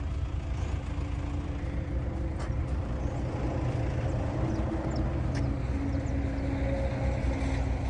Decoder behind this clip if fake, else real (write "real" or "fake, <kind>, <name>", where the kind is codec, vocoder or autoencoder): real